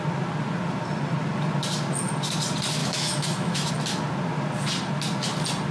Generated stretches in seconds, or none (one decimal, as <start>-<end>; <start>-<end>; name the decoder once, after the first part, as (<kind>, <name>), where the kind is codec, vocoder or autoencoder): 2.8-3.7 (autoencoder, DAC-VAE)